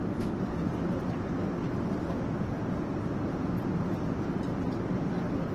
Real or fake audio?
real